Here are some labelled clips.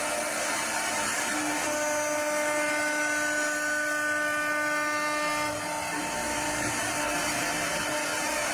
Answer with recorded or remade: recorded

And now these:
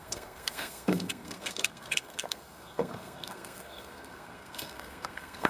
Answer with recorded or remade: remade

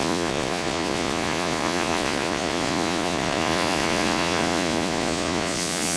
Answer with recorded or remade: remade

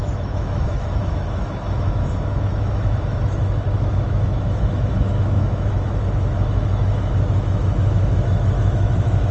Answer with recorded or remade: remade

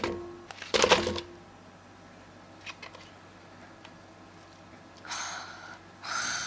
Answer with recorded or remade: recorded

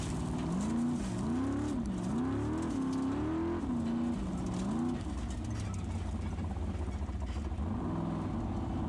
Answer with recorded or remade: recorded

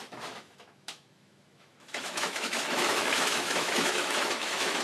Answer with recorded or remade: remade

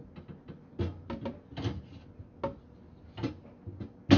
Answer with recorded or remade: recorded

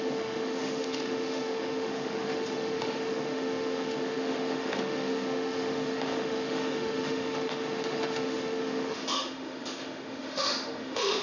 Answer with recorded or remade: remade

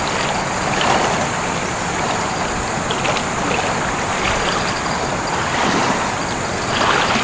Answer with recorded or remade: recorded